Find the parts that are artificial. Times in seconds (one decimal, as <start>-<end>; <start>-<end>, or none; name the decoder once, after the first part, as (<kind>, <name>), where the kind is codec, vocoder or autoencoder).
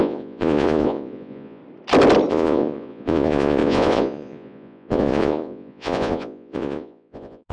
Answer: 0.0-1.6 (vocoder, Vocos); 2.3-7.5